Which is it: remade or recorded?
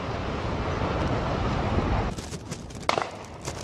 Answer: recorded